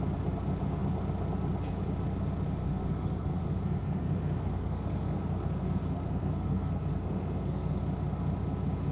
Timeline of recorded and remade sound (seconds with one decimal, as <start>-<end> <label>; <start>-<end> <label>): 0.0-2.6 recorded; 2.6-7.8 remade; 7.8-8.9 recorded